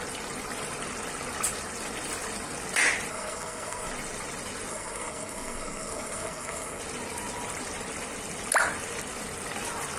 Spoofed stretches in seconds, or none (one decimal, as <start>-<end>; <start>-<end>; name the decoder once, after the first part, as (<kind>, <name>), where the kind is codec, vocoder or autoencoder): 3.1-3.9 (codec, SNAC); 4.7-6.8